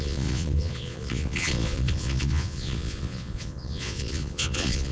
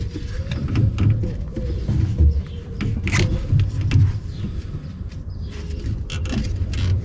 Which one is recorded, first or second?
second